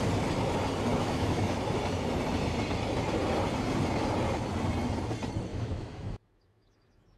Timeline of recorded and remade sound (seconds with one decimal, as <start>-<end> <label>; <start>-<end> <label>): 0.0-0.9 recorded; 0.9-1.5 remade; 1.5-5.5 recorded; 5.5-7.2 remade